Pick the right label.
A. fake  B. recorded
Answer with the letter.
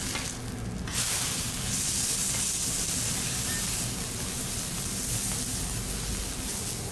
B